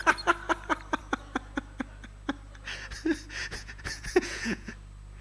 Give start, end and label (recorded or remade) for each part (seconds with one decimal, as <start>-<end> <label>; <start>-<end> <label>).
0.0-3.4 recorded; 3.4-4.7 remade; 4.7-5.2 recorded